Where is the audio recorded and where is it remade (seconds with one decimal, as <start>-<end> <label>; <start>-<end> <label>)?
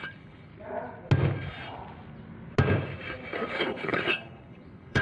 0.0-0.5 remade; 0.5-3.5 recorded; 3.5-5.0 remade